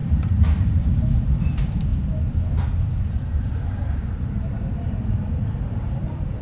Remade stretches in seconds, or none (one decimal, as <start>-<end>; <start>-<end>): 0.0-1.9; 2.7-6.4